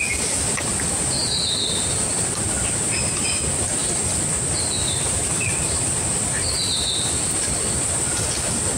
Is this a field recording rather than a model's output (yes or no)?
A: yes